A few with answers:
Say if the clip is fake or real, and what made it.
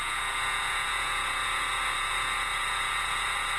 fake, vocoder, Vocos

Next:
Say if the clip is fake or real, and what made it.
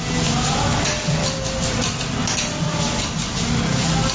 real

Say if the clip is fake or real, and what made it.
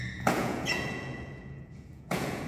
fake, vocoder, Vocos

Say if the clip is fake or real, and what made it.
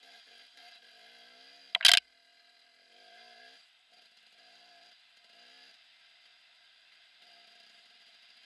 real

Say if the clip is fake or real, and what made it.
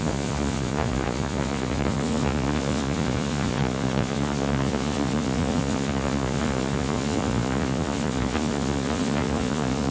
fake, vocoder, Vocos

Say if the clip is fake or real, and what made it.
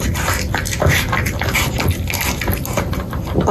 real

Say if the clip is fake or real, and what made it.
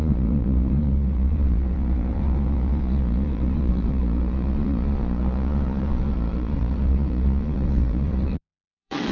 fake, vocoder, Vocos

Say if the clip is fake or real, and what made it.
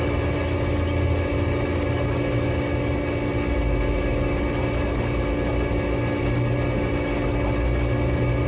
real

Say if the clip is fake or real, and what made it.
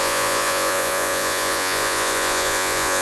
fake, vocoder, Vocos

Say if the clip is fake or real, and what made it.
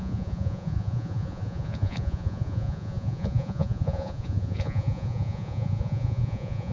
fake, vocoder, Vocos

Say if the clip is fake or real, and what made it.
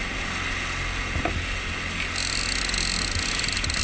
real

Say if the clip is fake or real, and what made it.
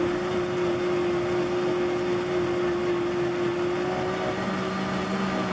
real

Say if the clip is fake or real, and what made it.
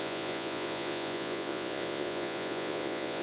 fake, vocoder, Vocos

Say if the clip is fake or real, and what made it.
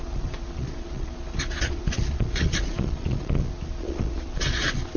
fake, vocoder, Vocos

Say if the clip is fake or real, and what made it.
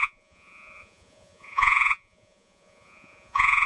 fake, vocoder, Vocos